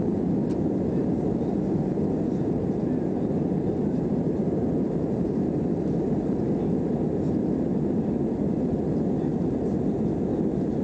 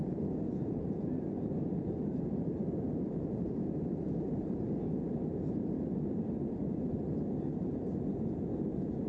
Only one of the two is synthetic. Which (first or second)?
second